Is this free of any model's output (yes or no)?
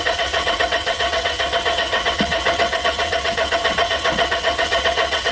no